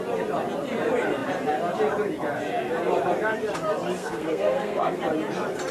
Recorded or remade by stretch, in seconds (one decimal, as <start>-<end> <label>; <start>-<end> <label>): 0.0-4.0 recorded; 4.0-5.0 remade; 5.0-5.7 recorded